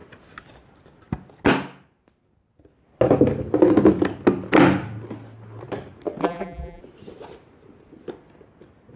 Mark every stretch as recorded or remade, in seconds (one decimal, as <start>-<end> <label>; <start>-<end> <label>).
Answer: 0.0-6.2 recorded; 6.2-6.8 remade; 6.8-9.0 recorded